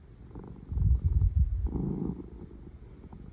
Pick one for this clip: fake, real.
real